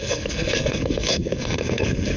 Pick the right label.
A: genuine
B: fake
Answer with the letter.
B